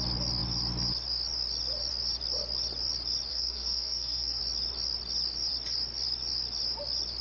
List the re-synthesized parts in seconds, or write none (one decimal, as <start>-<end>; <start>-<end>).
3.3-4.4